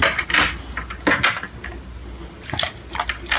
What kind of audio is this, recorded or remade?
recorded